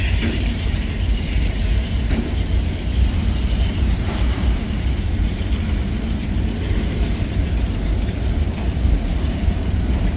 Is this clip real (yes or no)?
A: no